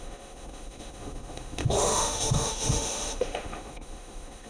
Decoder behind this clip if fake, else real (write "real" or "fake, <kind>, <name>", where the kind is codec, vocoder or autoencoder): fake, autoencoder, DAC-VAE